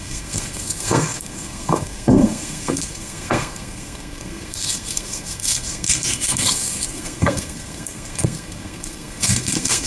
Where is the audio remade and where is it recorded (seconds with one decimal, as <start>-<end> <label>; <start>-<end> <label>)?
0.0-9.9 remade